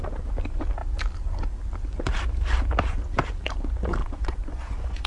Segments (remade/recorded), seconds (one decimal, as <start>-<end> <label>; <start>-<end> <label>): 0.0-4.0 recorded; 4.0-5.1 remade